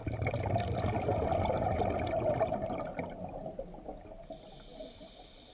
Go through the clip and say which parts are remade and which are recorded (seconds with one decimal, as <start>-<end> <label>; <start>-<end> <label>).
0.0-5.5 recorded